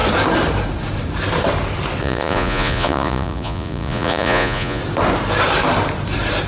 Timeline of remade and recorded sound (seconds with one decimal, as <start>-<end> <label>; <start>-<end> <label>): 0.0-2.0 recorded; 2.0-4.8 remade; 4.8-6.5 recorded